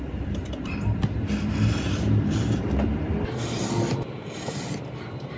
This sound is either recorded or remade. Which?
remade